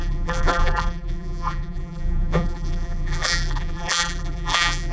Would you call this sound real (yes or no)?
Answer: no